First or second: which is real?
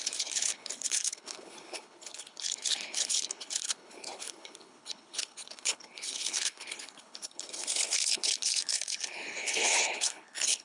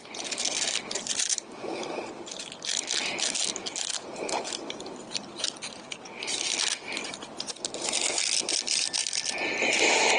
second